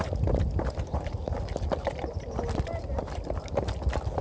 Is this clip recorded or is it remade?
recorded